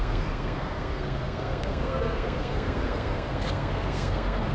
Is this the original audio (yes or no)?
no